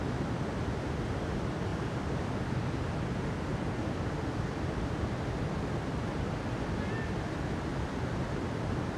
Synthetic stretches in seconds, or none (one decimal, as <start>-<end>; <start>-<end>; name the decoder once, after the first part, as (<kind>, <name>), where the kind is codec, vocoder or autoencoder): 1.7-2.4 (vocoder, BigVGAN v2); 3.5-6.2; 7.7-8.3

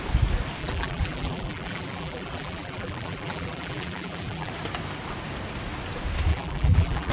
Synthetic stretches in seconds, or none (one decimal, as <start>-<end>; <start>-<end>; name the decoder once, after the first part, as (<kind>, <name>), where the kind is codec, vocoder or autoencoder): 0.6-4.5 (vocoder, BigVGAN v2); 6.3-7.1

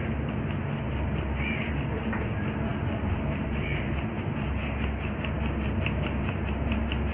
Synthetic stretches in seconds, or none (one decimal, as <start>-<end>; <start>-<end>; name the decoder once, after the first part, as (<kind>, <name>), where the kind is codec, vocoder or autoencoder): 2.7-3.8 (vocoder, BigVGAN v2)

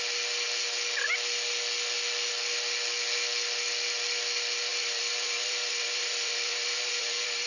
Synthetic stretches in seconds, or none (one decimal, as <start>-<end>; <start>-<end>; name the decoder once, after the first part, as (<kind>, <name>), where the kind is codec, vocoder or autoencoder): 4.7-7.5 (vocoder, BigVGAN v2)

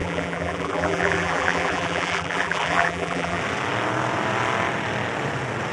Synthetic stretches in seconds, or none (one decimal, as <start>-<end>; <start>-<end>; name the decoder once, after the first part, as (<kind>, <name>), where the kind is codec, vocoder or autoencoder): 0.0-3.4 (vocoder, BigVGAN v2)

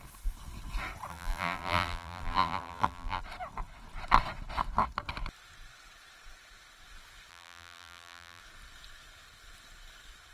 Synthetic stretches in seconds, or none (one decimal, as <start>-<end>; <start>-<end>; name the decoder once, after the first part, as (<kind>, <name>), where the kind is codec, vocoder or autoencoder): 1.1-3.2 (vocoder, BigVGAN v2); 7.3-8.4

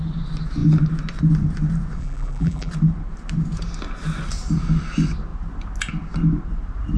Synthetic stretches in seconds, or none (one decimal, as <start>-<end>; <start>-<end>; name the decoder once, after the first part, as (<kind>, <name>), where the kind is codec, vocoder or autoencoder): 2.0-2.7 (vocoder, BigVGAN v2)